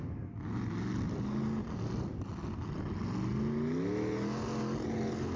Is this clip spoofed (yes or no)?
no